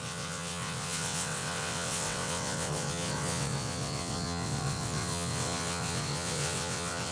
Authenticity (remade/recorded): remade